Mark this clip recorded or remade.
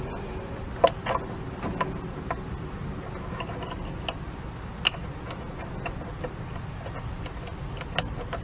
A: recorded